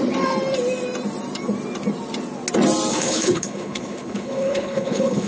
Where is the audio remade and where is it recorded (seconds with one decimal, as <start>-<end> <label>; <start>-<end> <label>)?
0.0-2.9 recorded; 2.9-5.3 remade